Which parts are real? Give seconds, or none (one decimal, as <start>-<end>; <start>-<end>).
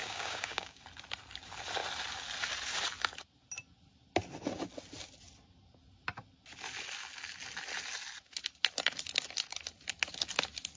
0.8-10.8